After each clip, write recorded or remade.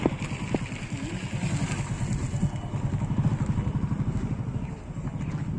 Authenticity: recorded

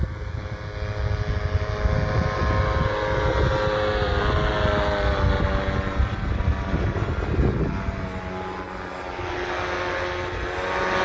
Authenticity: recorded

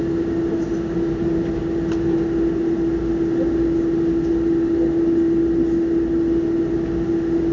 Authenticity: recorded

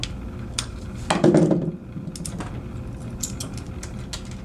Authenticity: recorded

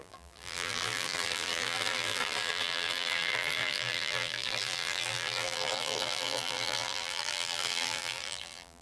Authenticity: remade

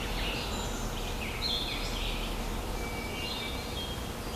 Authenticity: recorded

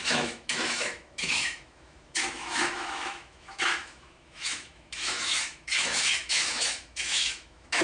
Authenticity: remade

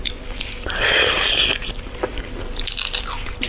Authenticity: recorded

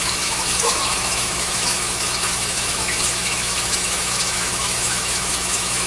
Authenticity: remade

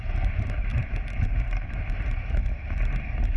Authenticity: remade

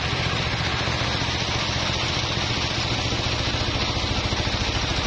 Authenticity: recorded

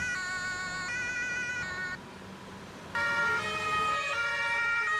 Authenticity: recorded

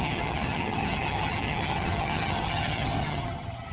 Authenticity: remade